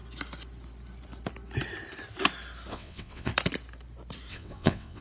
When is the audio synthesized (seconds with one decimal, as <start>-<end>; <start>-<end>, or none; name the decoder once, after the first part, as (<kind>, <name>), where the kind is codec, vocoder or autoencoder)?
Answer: 2.7-3.3 (vocoder, WaveNeXt); 4.3-5.0